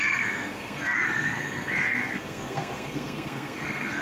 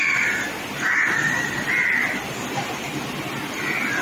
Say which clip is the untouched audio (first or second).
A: second